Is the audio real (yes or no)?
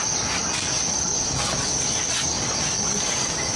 yes